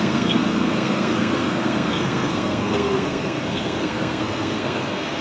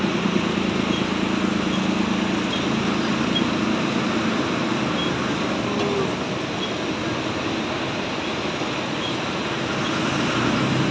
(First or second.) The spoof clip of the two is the first